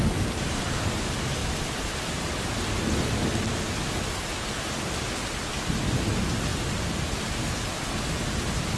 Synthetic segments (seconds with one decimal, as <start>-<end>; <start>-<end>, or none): 6.5-7.2